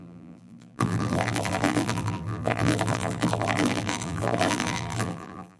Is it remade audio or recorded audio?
remade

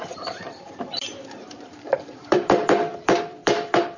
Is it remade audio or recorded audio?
remade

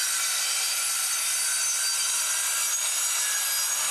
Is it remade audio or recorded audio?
recorded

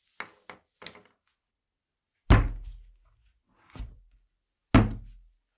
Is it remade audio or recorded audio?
recorded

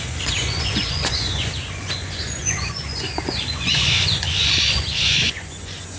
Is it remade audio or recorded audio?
remade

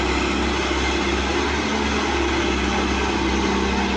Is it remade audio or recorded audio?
recorded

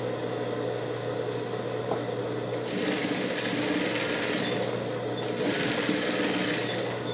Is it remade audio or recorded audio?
recorded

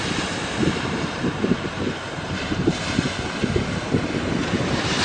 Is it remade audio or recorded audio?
remade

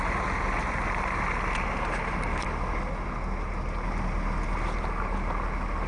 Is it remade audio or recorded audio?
recorded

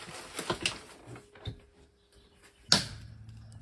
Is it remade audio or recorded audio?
recorded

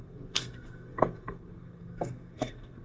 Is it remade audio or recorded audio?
remade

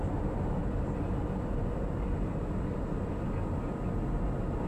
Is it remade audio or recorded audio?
recorded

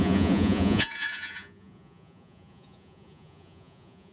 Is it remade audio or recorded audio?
remade